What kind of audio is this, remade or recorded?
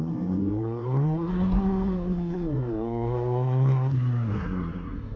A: remade